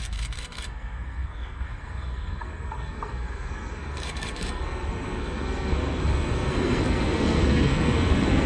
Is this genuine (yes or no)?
no